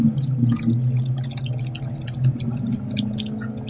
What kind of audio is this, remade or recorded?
recorded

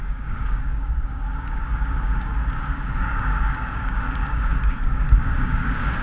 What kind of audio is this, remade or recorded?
remade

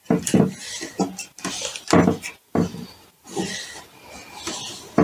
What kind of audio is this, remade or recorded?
recorded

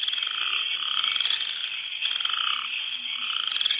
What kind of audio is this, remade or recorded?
recorded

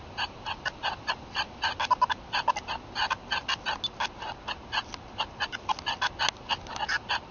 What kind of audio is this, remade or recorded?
recorded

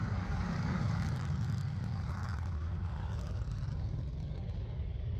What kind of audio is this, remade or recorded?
remade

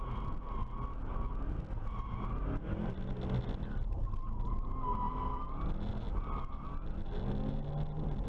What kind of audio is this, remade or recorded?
recorded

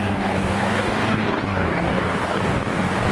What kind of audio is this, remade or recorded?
remade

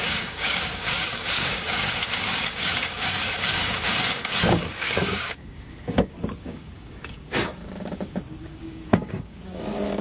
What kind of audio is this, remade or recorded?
remade